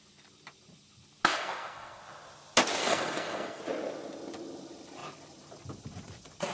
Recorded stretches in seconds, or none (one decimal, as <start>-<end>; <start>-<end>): 0.0-1.3; 2.0-2.8; 3.6-6.5